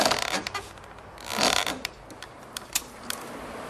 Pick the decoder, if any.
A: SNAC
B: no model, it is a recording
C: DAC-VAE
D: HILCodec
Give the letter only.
B